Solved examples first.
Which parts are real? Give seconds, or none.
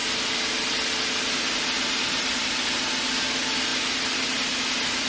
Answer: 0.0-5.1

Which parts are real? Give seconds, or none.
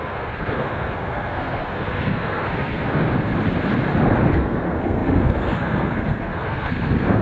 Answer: 3.0-4.3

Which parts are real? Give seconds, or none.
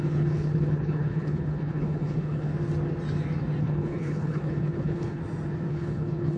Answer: 2.5-3.6; 5.2-5.7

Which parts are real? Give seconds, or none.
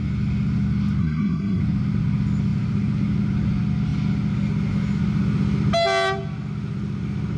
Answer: 0.0-1.0; 1.6-7.4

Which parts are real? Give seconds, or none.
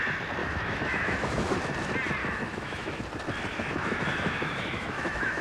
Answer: 0.0-0.4; 1.6-2.2; 3.0-3.5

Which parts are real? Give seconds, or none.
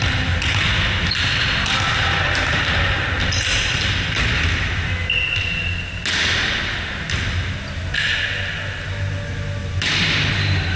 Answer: 0.0-10.8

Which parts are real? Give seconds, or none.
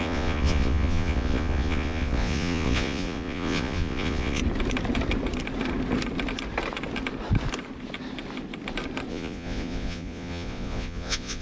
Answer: 4.4-9.1